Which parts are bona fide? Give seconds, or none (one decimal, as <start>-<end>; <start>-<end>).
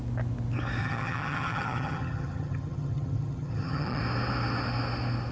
0.0-0.8; 4.0-5.3